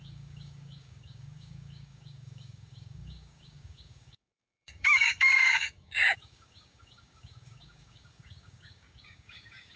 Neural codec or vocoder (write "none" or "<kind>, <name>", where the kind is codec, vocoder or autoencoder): codec, DAC